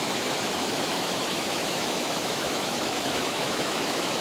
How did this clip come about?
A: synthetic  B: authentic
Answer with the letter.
A